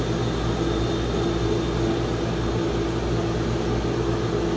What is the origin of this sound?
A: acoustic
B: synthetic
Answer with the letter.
A